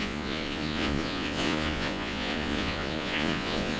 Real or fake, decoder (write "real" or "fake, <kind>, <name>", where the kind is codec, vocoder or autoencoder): fake, vocoder, Vocos